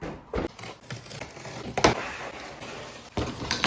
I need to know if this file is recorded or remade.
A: recorded